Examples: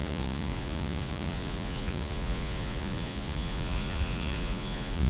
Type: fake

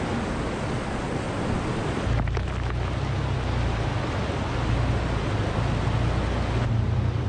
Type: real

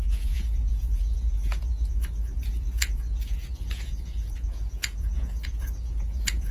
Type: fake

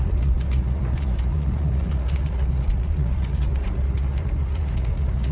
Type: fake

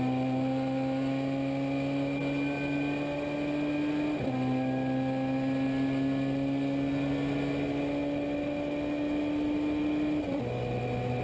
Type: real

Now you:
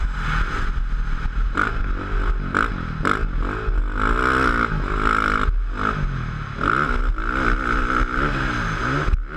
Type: real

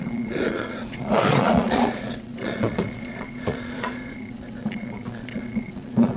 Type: fake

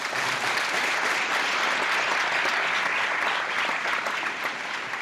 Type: real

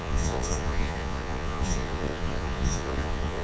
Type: fake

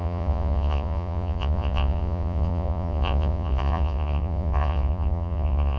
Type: fake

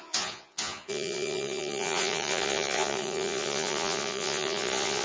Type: fake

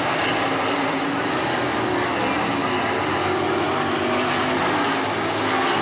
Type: real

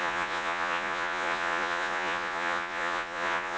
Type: fake